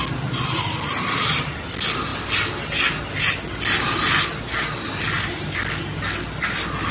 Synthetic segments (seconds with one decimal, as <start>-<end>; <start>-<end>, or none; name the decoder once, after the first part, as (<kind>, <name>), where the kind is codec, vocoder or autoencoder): none